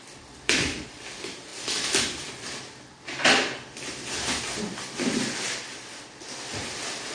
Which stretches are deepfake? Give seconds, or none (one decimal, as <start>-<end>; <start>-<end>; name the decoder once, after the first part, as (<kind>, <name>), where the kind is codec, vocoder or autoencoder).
0.0-7.1 (vocoder, BigVGAN v2)